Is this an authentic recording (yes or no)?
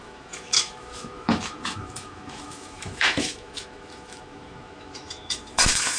no